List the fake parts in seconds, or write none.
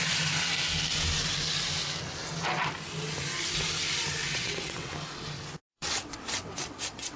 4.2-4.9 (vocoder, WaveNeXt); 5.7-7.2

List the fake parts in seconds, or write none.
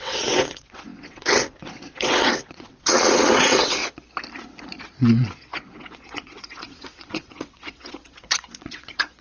0.0-3.8 (vocoder, WaveNeXt); 4.8-9.2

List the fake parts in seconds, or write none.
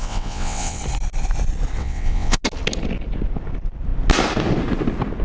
0.0-0.8 (vocoder, WaveNeXt); 1.8-2.4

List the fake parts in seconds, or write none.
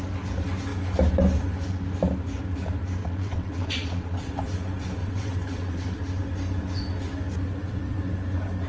3.0-4.3 (vocoder, WaveNeXt); 5.0-6.0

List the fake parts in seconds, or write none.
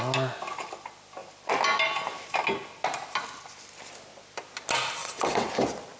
5.0-5.5 (vocoder, WaveNeXt)